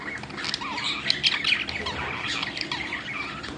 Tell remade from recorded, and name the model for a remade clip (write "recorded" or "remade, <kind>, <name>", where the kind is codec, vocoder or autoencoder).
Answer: recorded